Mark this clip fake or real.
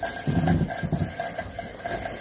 real